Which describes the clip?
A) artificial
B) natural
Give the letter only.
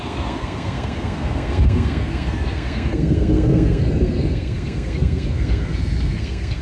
A